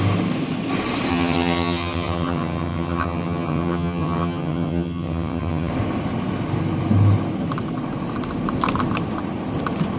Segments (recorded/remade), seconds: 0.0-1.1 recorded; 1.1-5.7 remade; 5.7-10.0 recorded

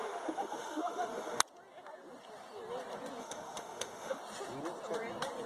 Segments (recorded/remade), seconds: 0.0-1.4 remade; 1.4-3.2 recorded; 3.2-4.2 remade; 4.2-5.5 recorded